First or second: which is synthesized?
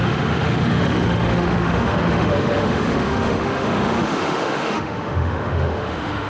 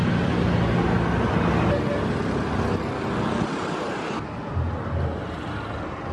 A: first